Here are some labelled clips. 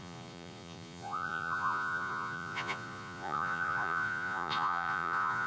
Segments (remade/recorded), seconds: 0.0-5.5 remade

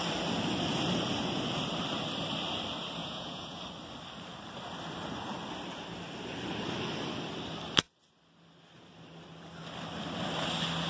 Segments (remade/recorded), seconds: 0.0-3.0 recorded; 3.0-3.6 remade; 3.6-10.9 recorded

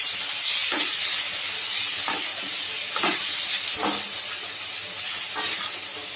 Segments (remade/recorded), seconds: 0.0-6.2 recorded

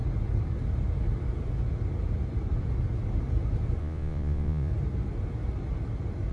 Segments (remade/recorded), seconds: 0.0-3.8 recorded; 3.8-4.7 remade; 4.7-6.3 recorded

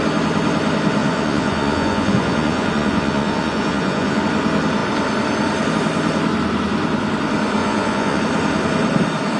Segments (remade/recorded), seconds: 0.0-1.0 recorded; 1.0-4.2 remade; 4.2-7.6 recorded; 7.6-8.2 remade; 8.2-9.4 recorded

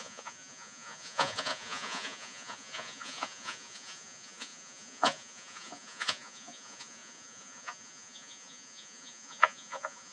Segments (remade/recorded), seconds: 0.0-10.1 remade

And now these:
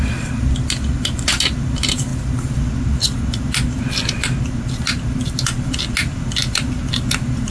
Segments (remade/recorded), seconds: 0.0-7.5 recorded

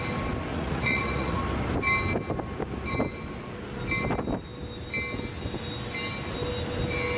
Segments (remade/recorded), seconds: 0.0-0.5 recorded; 0.5-1.4 remade; 1.4-7.2 recorded